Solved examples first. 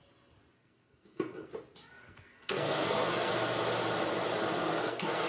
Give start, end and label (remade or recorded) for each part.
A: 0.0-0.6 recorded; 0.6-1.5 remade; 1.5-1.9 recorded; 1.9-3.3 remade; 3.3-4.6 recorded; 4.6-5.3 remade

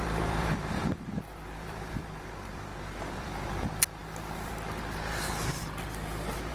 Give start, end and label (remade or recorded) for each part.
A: 0.0-2.7 remade; 2.7-3.2 recorded; 3.2-4.0 remade; 4.0-6.5 recorded